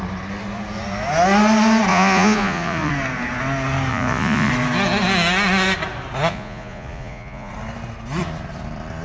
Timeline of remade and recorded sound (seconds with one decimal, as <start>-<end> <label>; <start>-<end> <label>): 0.0-1.9 recorded; 1.9-2.9 remade; 2.9-3.9 recorded; 3.9-4.5 remade; 4.5-6.3 recorded; 6.3-7.5 remade; 7.5-9.0 recorded